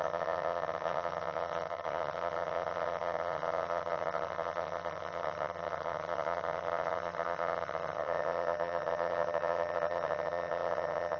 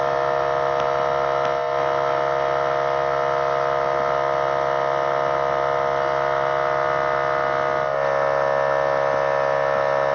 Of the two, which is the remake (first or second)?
first